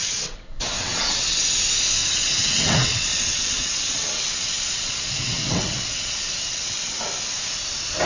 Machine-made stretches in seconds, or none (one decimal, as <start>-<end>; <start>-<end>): 0.0-1.4; 2.0-6.9